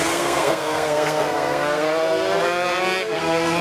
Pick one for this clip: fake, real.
fake